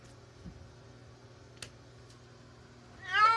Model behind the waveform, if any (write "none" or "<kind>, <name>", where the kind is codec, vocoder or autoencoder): none